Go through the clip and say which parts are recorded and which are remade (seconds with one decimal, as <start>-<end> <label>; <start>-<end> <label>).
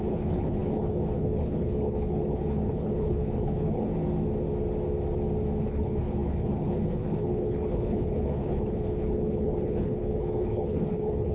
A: 0.0-3.9 remade; 3.9-5.6 recorded; 5.6-11.3 remade